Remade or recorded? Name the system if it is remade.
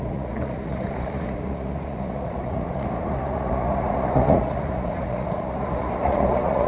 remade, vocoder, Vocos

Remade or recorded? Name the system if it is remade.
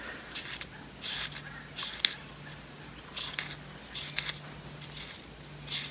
recorded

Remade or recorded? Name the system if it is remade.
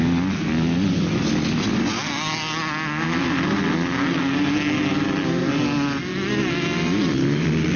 recorded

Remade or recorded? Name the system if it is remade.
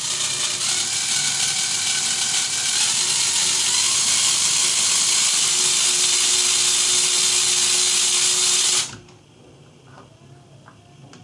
recorded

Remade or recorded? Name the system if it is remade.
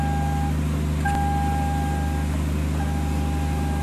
recorded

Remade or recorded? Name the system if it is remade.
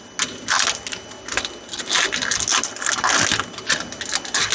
recorded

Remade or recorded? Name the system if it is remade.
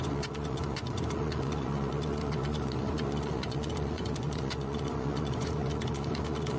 remade, vocoder, Vocos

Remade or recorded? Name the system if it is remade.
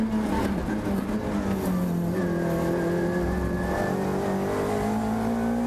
recorded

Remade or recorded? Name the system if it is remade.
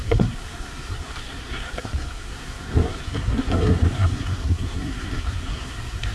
remade, codec, SNAC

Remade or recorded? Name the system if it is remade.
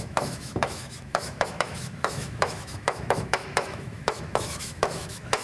remade, autoencoder, DAC-VAE